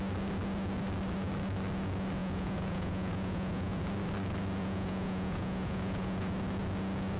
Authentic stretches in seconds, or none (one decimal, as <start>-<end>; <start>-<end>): 0.0-2.2; 3.8-4.6; 6.3-7.2